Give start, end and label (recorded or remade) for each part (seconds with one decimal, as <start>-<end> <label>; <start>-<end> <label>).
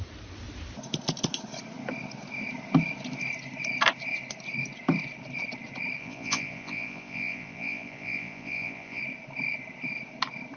0.0-6.0 recorded; 6.0-9.0 remade; 9.0-10.6 recorded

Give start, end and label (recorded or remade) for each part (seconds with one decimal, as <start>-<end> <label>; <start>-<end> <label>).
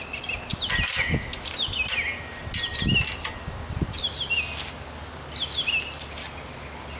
0.0-7.0 recorded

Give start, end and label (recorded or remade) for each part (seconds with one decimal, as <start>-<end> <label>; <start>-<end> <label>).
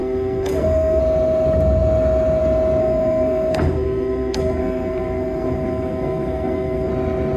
0.0-1.0 remade; 1.0-2.8 recorded; 2.8-6.9 remade; 6.9-7.4 recorded